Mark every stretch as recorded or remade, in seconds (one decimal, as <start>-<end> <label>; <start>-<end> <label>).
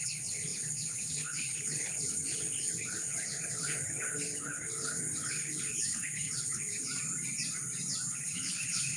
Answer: 0.0-6.9 remade; 6.9-8.1 recorded; 8.1-9.0 remade